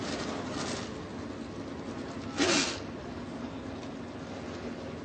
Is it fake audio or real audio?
real